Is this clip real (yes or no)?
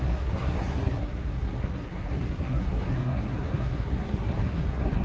no